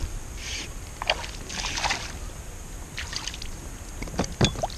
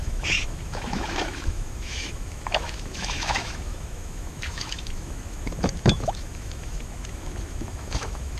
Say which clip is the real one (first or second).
first